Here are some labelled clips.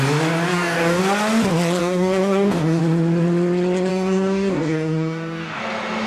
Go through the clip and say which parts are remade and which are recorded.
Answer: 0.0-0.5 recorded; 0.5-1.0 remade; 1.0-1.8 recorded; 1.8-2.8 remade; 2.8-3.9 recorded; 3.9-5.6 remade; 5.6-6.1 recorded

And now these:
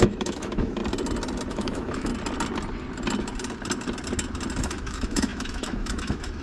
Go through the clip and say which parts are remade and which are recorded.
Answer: 0.0-0.8 remade; 0.8-1.5 recorded; 1.5-2.1 remade; 2.1-4.6 recorded; 4.6-6.4 remade

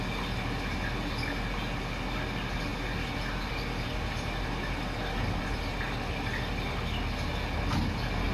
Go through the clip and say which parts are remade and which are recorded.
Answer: 0.0-8.3 recorded